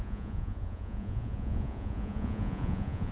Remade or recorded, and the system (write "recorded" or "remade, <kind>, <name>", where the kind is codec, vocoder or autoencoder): remade, vocoder, Vocos